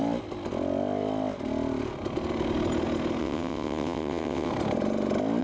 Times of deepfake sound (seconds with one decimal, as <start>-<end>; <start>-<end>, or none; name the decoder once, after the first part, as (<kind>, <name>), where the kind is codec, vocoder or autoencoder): 3.2-4.5 (vocoder, WaveNeXt)